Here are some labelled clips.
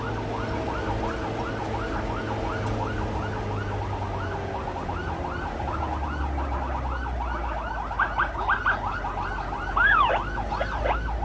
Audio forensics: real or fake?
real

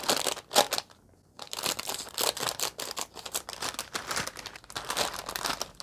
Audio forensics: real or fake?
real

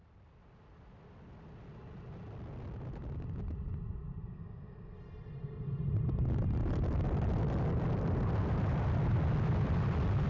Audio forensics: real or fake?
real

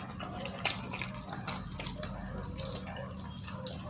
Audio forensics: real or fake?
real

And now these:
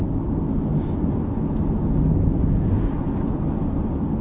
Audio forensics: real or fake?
real